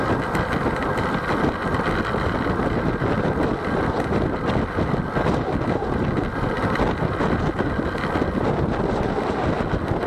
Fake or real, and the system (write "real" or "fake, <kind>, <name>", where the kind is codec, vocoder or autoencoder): real